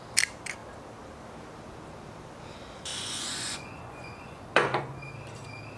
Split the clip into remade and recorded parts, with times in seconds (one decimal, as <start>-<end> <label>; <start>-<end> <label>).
0.0-2.9 recorded; 2.9-5.0 remade; 5.0-5.8 recorded